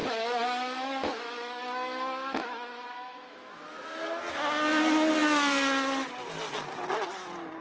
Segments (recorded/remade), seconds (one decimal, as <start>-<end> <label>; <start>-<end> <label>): 0.0-4.2 remade; 4.2-7.6 recorded